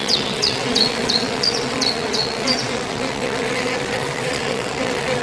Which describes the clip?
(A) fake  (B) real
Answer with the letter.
A